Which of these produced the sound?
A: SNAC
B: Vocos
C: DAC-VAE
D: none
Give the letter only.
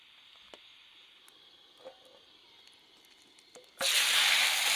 D